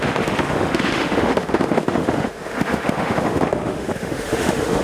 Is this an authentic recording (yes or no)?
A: no